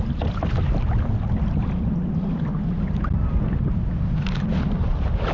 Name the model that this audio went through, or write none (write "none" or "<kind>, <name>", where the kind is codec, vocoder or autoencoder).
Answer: none